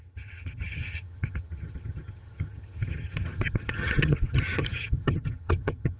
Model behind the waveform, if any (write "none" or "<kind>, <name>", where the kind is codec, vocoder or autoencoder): vocoder, HiFi-GAN